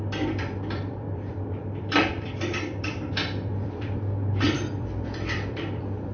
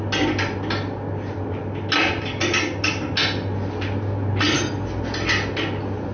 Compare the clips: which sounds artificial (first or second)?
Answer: first